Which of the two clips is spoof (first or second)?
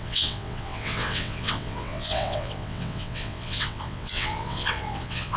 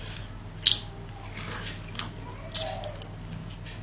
first